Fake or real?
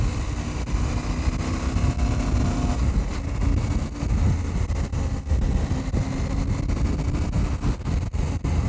real